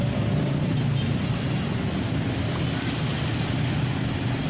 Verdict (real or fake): real